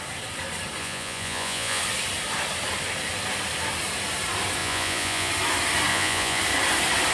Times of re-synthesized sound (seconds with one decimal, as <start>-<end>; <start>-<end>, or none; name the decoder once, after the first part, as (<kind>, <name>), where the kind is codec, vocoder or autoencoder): 0.8-1.8 (vocoder, Vocos); 4.6-5.3; 5.9-6.4

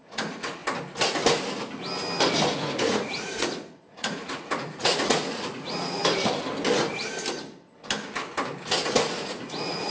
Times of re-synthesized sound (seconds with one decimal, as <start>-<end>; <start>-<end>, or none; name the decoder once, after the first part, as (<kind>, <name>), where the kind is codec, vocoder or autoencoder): 0.0-0.6 (vocoder, Vocos); 2.5-6.0; 8.9-9.9

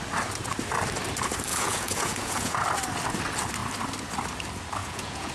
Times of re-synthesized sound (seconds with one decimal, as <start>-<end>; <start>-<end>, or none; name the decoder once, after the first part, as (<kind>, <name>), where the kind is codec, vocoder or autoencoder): 1.5-2.6 (vocoder, Vocos); 4.8-5.3

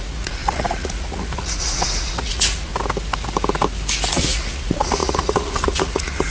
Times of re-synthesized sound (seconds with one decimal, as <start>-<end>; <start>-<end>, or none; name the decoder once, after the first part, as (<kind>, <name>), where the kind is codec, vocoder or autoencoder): 0.0-2.7 (vocoder, Vocos); 4.1-6.3

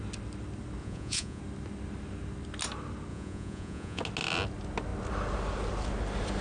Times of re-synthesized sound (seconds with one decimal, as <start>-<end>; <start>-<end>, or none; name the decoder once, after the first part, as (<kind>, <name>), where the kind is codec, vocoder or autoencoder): 0.8-1.4 (vocoder, Vocos); 3.1-4.0